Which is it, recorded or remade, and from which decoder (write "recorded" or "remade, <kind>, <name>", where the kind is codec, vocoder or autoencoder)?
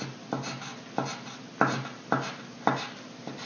recorded